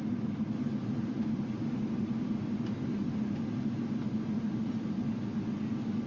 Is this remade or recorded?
recorded